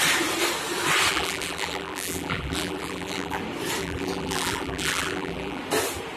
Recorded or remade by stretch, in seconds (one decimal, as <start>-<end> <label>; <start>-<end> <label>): 0.0-1.1 recorded; 1.1-3.4 remade; 3.4-3.8 recorded; 3.8-5.6 remade; 5.6-6.2 recorded